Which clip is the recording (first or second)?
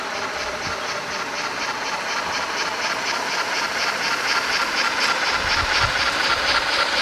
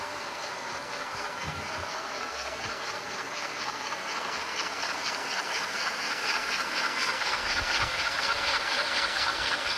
first